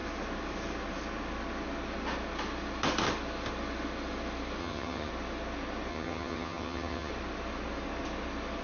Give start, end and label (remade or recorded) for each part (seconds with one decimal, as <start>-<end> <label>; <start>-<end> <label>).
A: 0.0-4.6 recorded; 4.6-5.1 remade; 5.1-5.9 recorded; 5.9-7.1 remade; 7.1-8.6 recorded